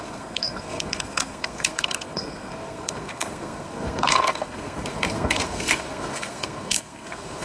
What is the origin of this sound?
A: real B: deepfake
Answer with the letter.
B